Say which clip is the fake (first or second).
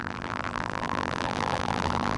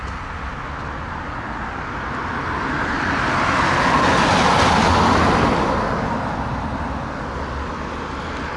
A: first